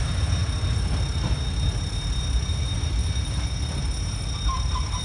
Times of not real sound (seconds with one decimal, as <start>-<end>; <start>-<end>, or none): none